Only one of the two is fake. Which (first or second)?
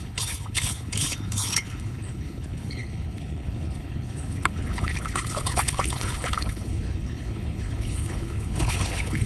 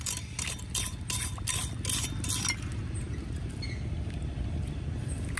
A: first